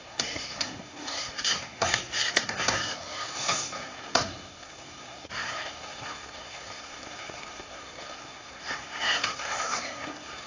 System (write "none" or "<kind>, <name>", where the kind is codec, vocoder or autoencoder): codec, SNAC